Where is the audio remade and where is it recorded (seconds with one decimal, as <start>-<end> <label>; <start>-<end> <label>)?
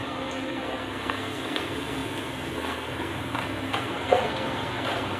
0.0-5.2 remade